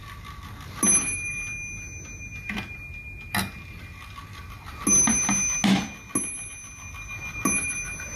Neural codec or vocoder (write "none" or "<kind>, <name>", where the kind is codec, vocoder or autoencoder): none